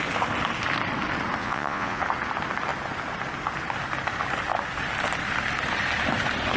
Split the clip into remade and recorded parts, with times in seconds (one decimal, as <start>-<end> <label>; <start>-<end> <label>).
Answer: 0.0-1.4 recorded; 1.4-2.0 remade; 2.0-6.6 recorded